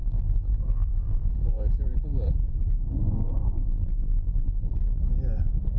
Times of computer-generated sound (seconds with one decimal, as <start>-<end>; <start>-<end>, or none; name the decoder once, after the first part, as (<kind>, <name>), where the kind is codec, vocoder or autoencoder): 0.0-1.3 (vocoder, BigVGAN v2); 3.6-5.0